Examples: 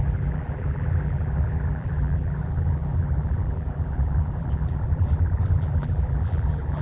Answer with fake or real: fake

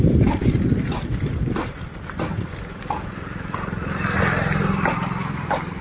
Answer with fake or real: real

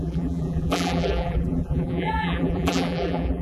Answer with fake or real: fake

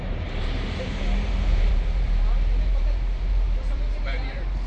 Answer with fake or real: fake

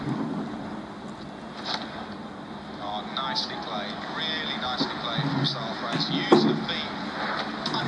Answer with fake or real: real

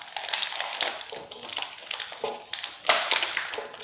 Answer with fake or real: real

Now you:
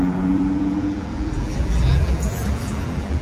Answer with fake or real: fake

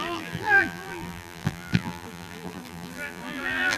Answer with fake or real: fake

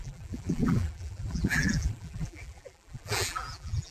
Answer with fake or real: fake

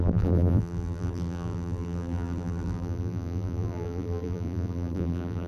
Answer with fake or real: fake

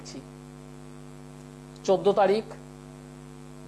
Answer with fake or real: real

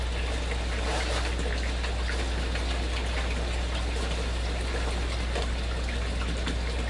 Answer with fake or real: real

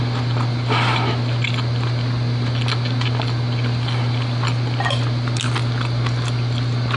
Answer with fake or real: real